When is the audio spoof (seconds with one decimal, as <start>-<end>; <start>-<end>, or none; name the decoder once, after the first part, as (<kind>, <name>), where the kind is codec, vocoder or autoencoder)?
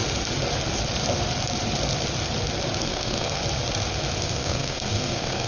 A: 2.8-3.4 (codec, SNAC); 4.2-5.5